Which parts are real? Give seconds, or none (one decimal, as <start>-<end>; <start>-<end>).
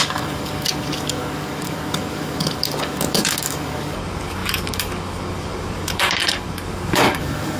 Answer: none